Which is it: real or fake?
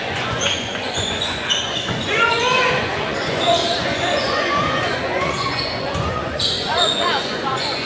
fake